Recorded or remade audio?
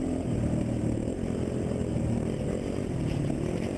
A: recorded